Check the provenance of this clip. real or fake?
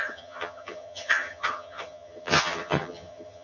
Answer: fake